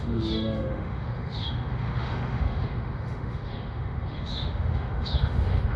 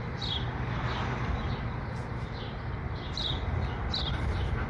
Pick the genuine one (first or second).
second